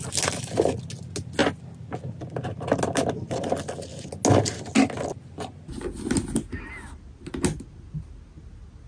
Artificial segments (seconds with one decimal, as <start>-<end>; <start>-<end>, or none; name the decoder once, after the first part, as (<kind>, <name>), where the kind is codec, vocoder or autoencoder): none